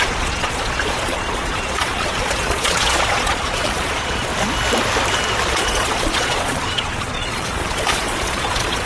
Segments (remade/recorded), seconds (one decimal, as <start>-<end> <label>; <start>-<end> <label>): 0.0-4.3 remade; 4.3-5.5 recorded; 5.5-8.9 remade